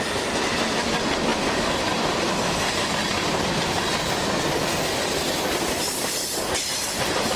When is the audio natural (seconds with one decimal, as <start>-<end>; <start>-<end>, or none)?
0.0-1.3; 2.7-7.4

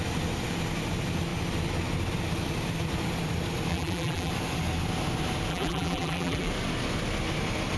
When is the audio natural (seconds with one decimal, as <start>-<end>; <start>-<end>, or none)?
0.0-3.7; 4.3-5.5; 6.5-7.8

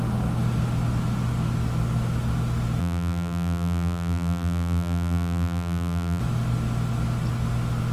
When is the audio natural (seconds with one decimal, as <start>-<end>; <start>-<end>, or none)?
0.0-2.8; 6.2-7.9